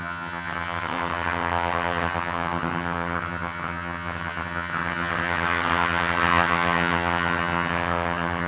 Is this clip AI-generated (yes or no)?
yes